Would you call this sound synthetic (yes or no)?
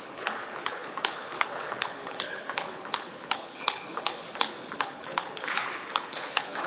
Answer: yes